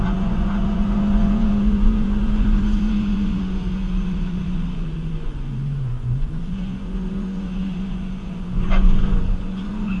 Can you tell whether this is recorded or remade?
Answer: remade